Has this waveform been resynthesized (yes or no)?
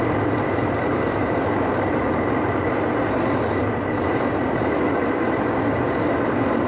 yes